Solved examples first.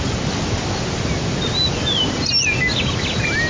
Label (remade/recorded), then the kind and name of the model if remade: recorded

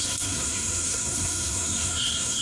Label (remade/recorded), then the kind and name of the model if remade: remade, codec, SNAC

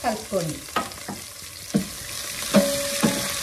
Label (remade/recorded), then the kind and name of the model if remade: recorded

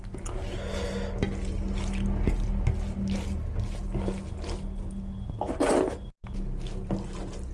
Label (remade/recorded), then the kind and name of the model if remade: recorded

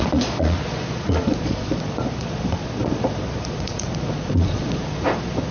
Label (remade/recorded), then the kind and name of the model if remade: remade, vocoder, Vocos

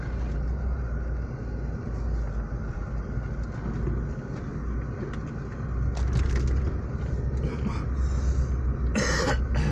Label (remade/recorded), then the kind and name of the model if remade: recorded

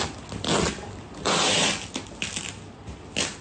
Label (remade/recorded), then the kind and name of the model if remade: recorded